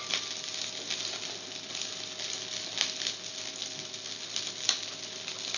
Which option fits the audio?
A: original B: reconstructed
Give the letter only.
A